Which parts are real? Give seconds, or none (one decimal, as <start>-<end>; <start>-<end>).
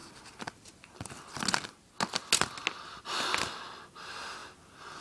0.0-5.0